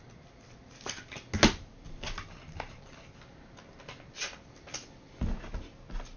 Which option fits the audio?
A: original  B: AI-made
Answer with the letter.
A